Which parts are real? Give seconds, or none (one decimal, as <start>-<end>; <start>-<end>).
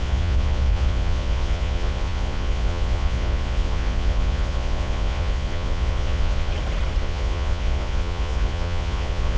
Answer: 6.5-7.0